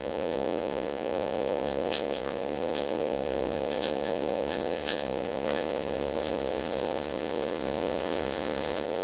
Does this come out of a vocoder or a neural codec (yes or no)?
yes